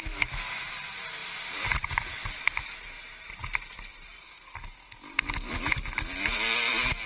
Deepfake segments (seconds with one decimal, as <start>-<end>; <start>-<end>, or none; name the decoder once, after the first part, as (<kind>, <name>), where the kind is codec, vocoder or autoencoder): none